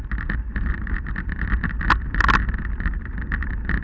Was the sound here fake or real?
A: real